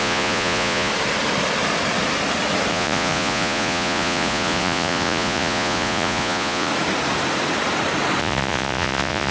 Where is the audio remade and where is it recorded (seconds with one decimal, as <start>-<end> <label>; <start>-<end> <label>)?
0.0-0.9 remade; 0.9-2.7 recorded; 2.7-6.7 remade; 6.7-8.2 recorded; 8.2-9.3 remade